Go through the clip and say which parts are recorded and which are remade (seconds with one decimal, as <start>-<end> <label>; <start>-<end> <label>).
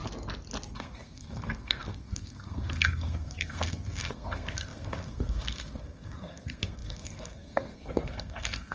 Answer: 0.0-0.7 recorded; 0.7-8.7 remade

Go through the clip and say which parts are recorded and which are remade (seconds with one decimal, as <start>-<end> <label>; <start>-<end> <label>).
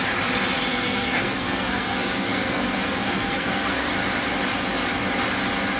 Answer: 0.0-0.7 recorded; 0.7-3.9 remade; 3.9-5.8 recorded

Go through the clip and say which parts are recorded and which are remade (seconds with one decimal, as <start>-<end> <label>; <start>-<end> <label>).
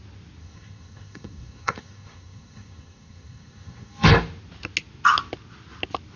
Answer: 0.0-0.4 recorded; 0.4-4.1 remade; 4.1-6.2 recorded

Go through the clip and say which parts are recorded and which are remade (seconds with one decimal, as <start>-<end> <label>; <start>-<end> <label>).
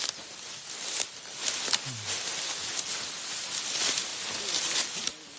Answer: 0.0-5.4 recorded